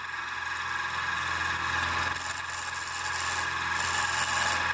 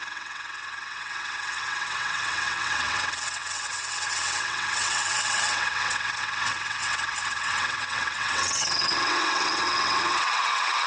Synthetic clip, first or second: second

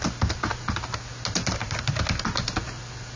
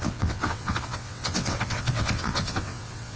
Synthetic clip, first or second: second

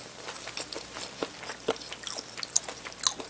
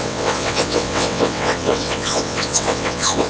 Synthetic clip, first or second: second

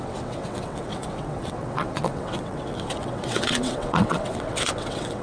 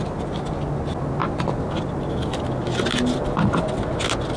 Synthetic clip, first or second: first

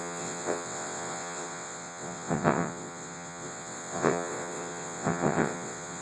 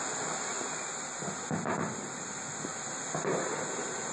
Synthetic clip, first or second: first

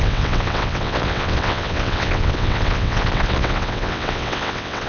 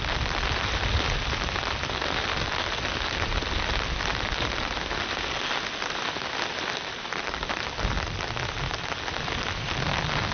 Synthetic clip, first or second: first